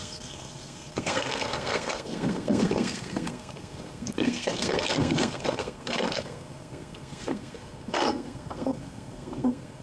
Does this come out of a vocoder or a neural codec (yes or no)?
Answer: yes